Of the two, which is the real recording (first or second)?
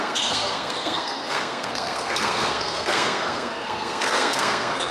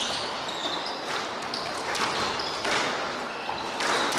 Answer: second